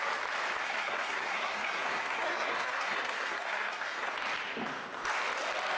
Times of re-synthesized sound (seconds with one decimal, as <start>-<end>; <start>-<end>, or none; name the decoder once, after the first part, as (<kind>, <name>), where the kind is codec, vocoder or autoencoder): 0.6-4.1 (codec, SNAC)